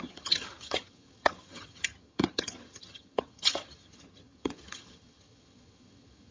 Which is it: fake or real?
fake